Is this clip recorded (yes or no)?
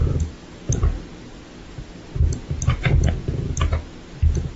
yes